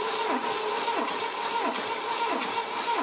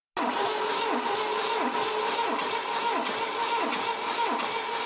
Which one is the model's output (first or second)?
first